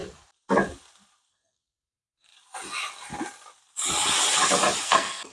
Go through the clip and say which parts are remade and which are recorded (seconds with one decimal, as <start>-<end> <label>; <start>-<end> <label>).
0.0-1.3 recorded; 1.3-2.3 remade; 2.3-4.8 recorded; 4.8-5.3 remade